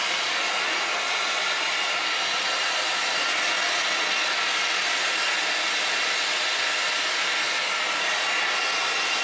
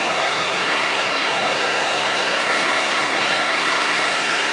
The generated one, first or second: second